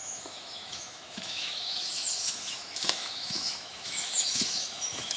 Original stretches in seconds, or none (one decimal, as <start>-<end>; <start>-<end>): none